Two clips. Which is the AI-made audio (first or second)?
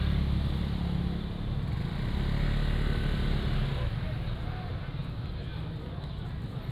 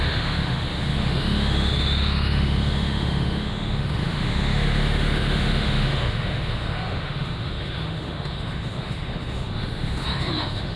second